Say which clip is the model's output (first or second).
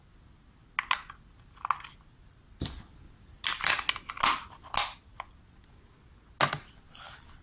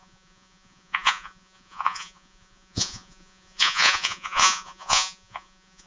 second